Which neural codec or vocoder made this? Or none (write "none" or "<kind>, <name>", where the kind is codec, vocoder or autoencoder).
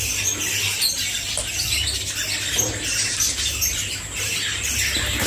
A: none